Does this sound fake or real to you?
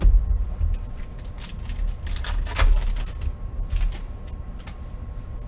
real